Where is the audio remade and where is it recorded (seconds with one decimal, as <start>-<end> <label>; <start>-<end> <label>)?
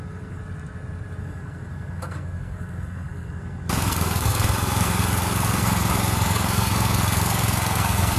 0.0-0.4 remade; 0.4-1.2 recorded; 1.2-8.2 remade